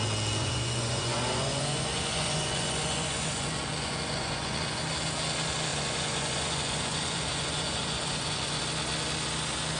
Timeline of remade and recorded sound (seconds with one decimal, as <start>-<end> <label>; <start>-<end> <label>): 0.0-0.4 recorded; 0.4-4.8 remade; 4.8-5.7 recorded; 5.7-8.6 remade; 8.6-9.8 recorded